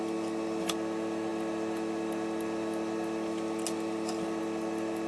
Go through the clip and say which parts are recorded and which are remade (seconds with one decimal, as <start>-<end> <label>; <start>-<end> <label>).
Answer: 0.0-5.1 recorded